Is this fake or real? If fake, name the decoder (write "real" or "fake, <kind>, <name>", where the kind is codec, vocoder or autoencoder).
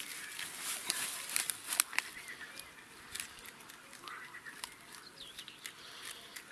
real